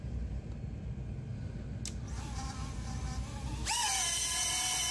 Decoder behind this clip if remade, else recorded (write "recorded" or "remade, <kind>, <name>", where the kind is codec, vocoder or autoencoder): recorded